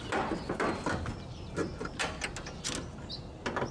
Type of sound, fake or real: real